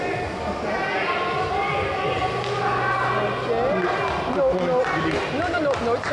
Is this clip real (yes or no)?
yes